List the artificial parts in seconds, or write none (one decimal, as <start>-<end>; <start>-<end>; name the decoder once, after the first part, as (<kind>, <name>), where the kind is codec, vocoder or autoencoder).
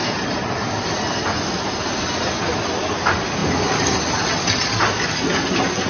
none